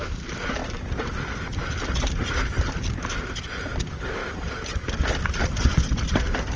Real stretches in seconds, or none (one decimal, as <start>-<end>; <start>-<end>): 0.0-6.6